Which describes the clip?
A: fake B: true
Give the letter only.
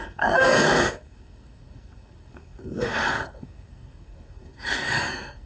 A